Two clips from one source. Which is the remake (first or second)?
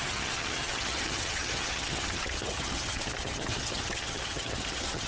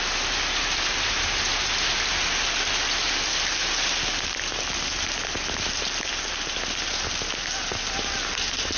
first